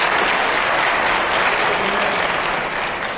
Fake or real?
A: real